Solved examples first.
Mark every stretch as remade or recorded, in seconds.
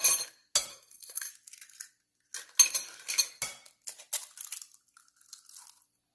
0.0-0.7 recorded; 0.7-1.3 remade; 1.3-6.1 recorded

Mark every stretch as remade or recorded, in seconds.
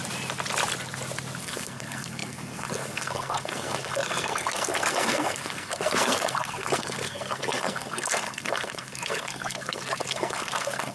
0.0-1.4 recorded; 1.4-10.9 remade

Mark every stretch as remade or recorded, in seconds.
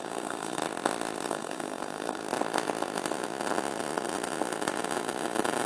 0.0-0.6 remade; 0.6-1.3 recorded; 1.3-2.2 remade; 2.2-5.7 recorded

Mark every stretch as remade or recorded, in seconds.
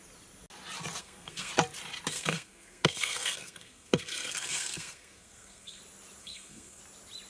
0.0-1.0 recorded; 1.0-1.5 remade; 1.5-2.1 recorded; 2.1-5.8 remade; 5.8-6.2 recorded; 6.2-6.8 remade; 6.8-7.3 recorded